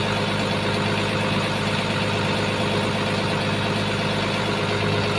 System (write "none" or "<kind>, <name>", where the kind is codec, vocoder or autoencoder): none